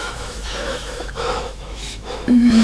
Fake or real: fake